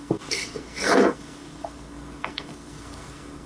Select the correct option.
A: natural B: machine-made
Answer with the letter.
B